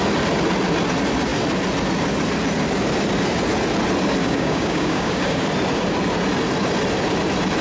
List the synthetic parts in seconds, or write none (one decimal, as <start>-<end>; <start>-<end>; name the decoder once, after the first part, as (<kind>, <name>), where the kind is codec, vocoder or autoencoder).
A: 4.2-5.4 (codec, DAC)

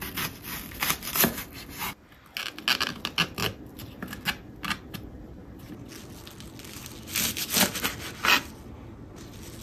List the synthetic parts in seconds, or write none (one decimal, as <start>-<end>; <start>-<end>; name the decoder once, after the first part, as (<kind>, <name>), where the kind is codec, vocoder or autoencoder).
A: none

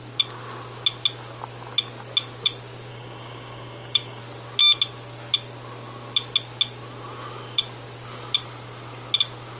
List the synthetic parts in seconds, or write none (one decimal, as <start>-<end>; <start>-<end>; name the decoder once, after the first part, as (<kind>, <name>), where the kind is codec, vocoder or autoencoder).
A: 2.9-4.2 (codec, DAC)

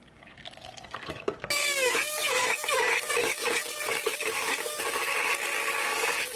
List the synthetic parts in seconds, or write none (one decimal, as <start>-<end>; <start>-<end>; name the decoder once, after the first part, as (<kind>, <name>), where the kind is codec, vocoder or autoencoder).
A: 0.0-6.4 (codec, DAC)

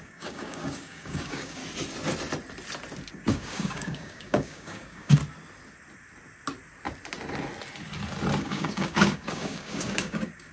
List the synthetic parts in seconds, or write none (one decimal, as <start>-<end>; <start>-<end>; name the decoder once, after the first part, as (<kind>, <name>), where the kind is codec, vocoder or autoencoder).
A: 0.0-1.6 (codec, DAC); 3.1-5.2; 8.4-10.5

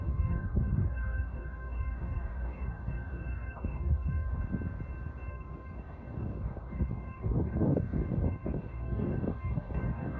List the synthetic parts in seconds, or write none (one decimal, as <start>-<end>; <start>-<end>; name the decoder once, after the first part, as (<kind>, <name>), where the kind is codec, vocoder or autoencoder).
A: 0.0-4.3 (codec, DAC); 5.3-10.2